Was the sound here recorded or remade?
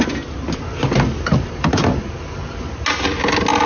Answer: recorded